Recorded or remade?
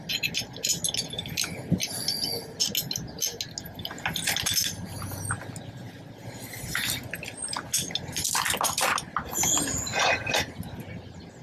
recorded